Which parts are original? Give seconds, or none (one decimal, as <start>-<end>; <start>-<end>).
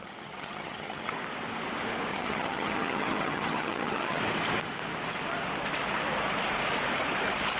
1.1-2.1; 4.2-7.6